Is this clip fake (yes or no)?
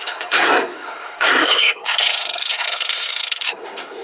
yes